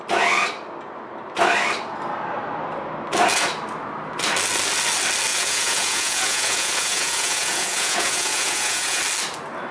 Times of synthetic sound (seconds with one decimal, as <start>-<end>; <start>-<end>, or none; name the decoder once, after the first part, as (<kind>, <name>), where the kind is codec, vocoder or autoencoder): 5.3-9.0 (vocoder, Vocos)